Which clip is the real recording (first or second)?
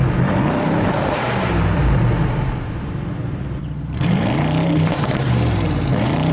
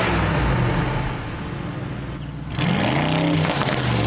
second